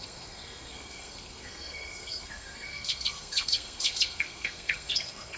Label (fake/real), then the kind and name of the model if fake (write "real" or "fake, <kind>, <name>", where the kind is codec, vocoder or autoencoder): fake, codec, SNAC